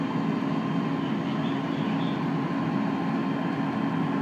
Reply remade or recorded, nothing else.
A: recorded